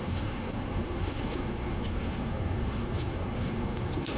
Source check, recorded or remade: remade